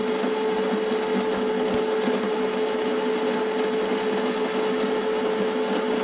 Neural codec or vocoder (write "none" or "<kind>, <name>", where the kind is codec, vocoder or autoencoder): none